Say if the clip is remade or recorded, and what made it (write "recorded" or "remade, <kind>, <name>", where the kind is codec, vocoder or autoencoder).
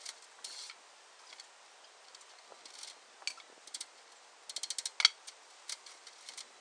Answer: recorded